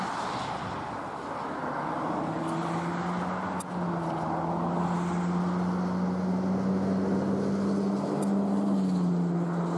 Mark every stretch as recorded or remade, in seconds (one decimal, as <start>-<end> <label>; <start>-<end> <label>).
0.0-1.6 recorded; 1.6-2.4 remade; 2.4-9.8 recorded